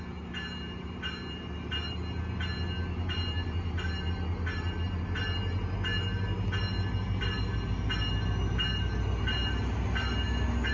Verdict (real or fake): real